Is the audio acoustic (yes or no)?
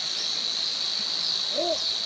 yes